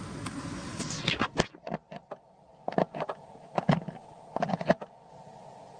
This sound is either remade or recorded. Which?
recorded